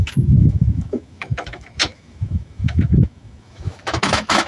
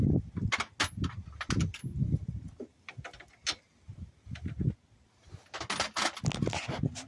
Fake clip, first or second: first